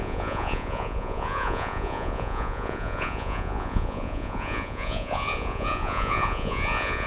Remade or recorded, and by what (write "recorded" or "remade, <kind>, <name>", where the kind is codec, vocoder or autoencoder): remade, vocoder, Vocos